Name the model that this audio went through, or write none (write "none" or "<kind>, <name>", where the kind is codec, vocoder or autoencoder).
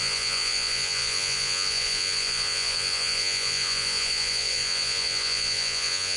vocoder, Vocos